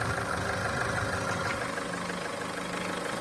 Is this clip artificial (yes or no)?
no